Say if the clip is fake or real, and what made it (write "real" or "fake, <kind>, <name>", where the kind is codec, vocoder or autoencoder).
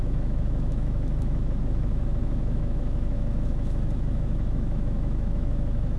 fake, autoencoder, DAC-VAE